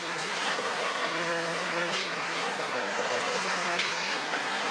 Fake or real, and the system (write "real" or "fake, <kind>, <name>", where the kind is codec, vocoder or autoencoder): fake, codec, SNAC